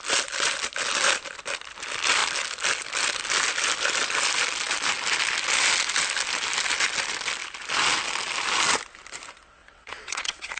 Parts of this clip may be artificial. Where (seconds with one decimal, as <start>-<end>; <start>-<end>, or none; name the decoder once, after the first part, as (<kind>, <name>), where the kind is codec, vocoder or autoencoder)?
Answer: 9.6-10.6 (vocoder, WaveNeXt)